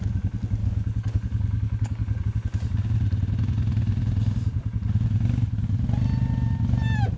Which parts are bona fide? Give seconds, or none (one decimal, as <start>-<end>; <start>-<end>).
0.0-0.6; 2.2-7.2